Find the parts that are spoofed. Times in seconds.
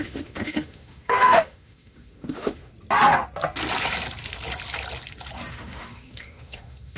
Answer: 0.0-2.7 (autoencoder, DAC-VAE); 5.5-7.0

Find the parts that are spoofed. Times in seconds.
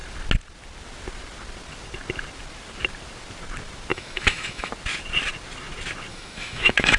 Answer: 3.9-4.7 (autoencoder, DAC-VAE); 6.1-7.0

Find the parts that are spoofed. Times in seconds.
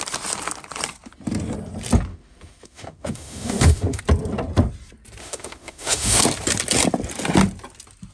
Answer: 2.1-4.0 (autoencoder, DAC-VAE); 5.2-6.2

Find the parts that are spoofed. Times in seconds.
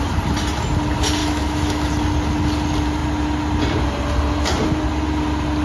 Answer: 1.2-1.9 (autoencoder, DAC-VAE)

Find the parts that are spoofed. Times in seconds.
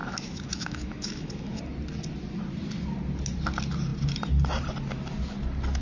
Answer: 0.0-1.6 (autoencoder, DAC-VAE)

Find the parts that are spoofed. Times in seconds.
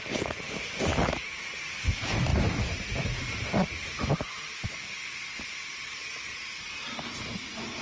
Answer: 0.9-1.4 (autoencoder, DAC-VAE)